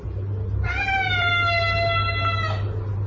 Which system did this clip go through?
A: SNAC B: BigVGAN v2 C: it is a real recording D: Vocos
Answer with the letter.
C